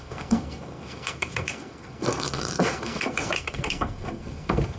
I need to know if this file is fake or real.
fake